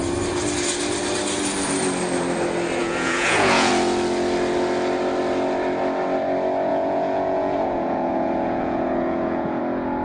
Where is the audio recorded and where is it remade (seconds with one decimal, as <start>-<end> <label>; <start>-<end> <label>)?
0.0-2.8 recorded; 2.8-3.7 remade; 3.7-6.7 recorded; 6.7-9.6 remade; 9.6-10.0 recorded